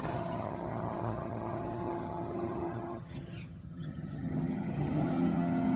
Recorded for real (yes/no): no